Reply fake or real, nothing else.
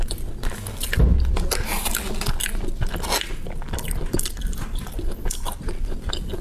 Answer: real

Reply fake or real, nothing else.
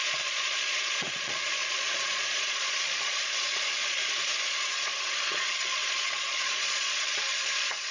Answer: fake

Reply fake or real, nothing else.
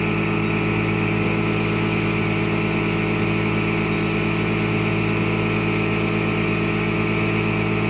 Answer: real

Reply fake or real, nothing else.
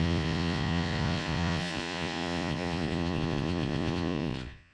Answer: fake